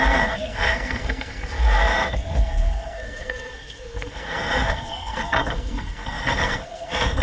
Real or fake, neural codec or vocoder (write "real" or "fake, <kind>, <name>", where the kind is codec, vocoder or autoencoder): fake, codec, SNAC